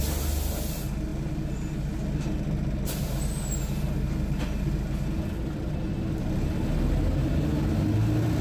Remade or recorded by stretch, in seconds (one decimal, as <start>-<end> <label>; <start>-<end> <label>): 0.0-8.4 recorded